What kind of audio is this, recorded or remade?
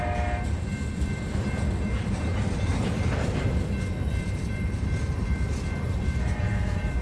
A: remade